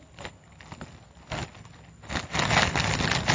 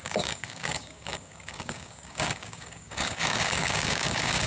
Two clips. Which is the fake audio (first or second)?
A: second